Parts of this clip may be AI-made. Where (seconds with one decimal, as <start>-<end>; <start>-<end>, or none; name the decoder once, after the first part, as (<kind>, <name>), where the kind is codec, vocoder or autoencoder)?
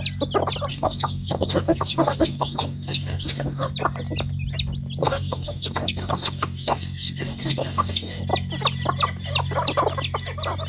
0.7-3.7 (codec, DAC); 5.0-8.2